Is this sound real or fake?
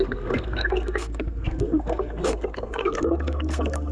fake